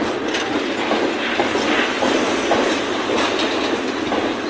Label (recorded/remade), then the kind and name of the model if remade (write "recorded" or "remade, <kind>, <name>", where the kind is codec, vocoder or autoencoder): recorded